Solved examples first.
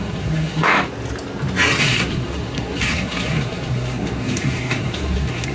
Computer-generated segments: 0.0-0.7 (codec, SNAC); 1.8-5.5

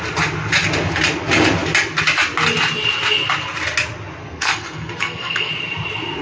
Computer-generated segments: 4.2-5.5 (codec, SNAC)

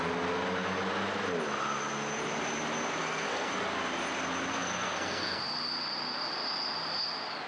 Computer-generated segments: 3.0-3.5 (codec, SNAC); 4.5-5.4

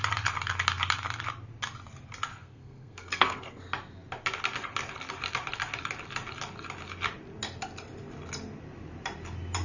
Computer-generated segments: 2.3-3.6 (codec, SNAC)